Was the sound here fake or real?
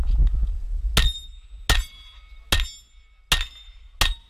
real